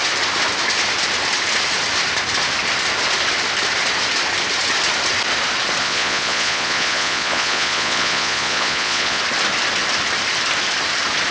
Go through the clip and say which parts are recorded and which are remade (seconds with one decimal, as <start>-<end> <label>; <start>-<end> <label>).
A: 0.0-5.8 recorded; 5.8-9.2 remade; 9.2-11.3 recorded